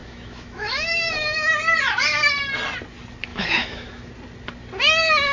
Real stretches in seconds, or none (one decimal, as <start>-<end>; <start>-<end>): 1.6-3.3; 4.1-5.3